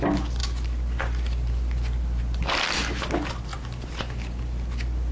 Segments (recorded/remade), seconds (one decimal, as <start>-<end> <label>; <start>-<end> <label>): 0.0-5.1 recorded